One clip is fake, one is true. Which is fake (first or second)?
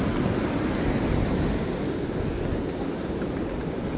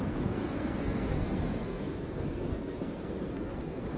second